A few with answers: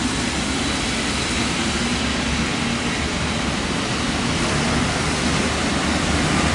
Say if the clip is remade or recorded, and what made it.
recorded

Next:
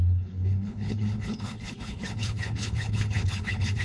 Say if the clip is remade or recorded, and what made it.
remade, codec, HILCodec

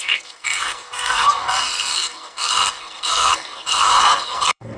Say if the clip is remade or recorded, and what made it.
remade, codec, SNAC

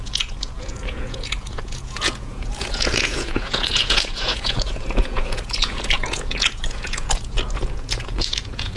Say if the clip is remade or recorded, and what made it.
remade, vocoder, Vocos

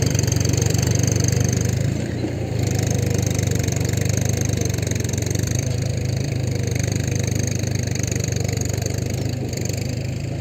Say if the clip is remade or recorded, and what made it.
remade, vocoder, BigVGAN v2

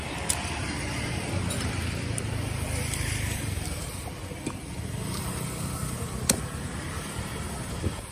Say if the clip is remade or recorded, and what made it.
remade, vocoder, BigVGAN v2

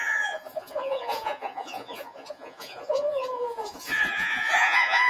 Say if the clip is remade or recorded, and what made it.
remade, vocoder, Vocos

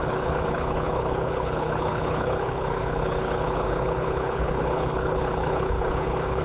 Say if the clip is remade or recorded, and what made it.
remade, codec, HILCodec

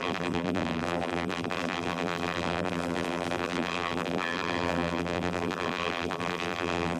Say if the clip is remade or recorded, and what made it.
remade, vocoder, BigVGAN v2